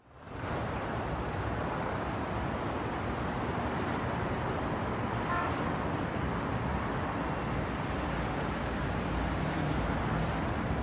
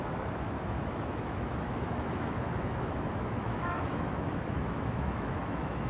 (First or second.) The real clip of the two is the first